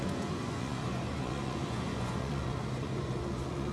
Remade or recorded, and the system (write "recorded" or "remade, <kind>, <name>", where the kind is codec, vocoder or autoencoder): remade, vocoder, Vocos